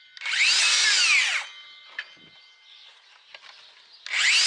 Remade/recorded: recorded